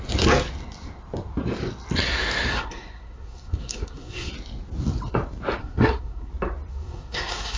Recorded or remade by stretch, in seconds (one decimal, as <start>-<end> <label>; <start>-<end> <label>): 0.0-2.5 recorded; 2.5-4.3 remade; 4.3-5.6 recorded; 5.6-6.3 remade; 6.3-6.7 recorded; 6.7-7.6 remade